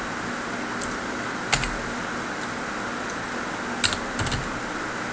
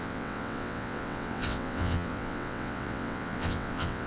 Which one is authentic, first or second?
first